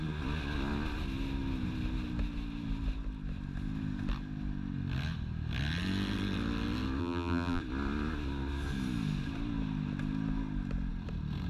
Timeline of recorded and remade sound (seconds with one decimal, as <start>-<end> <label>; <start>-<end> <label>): 0.0-7.0 recorded; 7.0-7.6 remade; 7.6-11.5 recorded